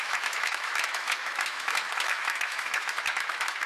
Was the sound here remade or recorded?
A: remade